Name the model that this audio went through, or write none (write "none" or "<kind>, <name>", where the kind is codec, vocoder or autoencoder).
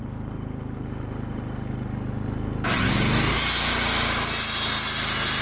none